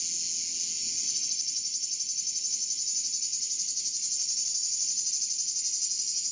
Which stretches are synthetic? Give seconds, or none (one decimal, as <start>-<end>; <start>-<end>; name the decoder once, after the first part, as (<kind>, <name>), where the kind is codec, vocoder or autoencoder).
none